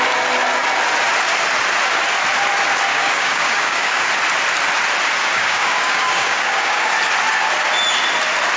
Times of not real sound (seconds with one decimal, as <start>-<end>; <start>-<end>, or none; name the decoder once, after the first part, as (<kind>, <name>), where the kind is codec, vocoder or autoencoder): 2.9-4.1 (codec, DAC); 5.2-6.9